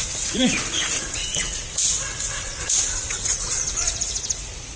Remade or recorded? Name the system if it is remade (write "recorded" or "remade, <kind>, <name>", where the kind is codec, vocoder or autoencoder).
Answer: remade, vocoder, Vocos